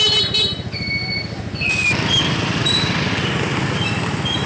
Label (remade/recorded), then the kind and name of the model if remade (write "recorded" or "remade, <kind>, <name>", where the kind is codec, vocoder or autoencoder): recorded